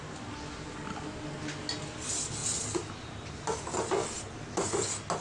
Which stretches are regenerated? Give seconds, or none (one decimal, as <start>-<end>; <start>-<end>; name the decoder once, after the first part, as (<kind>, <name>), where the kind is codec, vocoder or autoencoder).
none